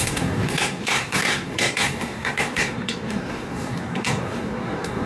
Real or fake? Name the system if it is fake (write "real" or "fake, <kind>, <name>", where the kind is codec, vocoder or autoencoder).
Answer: fake, codec, SNAC